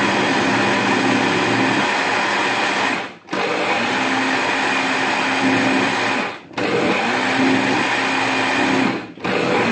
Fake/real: real